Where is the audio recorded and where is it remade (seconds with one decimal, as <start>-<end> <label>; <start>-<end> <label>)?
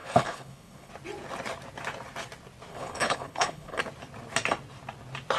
0.0-0.9 remade; 0.9-2.7 recorded; 2.7-3.8 remade; 3.8-5.4 recorded